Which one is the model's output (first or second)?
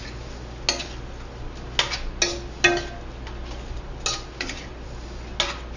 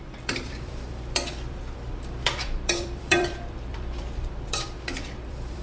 second